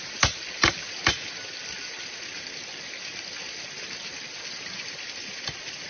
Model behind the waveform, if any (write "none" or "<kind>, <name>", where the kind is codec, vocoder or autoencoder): none